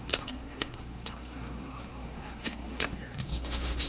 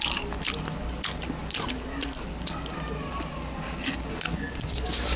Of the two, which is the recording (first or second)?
second